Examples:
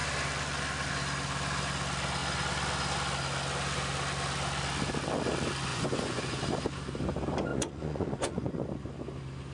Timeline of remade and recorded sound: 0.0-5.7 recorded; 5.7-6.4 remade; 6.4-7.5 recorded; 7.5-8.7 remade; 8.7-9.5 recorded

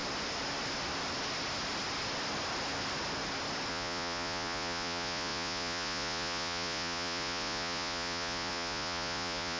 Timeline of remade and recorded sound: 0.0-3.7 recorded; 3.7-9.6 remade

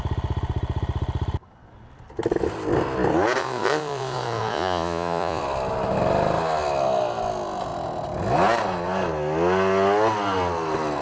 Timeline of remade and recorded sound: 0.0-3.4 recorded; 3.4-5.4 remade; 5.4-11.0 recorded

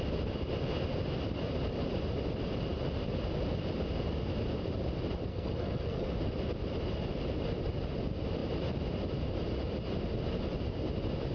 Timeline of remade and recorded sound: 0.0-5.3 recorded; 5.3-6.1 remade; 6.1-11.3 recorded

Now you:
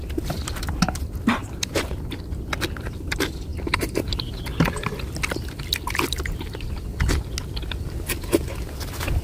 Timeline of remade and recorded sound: 0.0-1.4 recorded; 1.4-2.2 remade; 2.2-3.5 recorded; 3.5-4.4 remade; 4.4-9.2 recorded

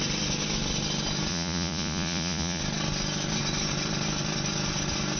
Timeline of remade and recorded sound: 0.0-1.3 recorded; 1.3-2.6 remade; 2.6-5.2 recorded